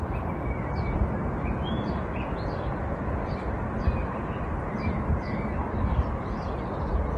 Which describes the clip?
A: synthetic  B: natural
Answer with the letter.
B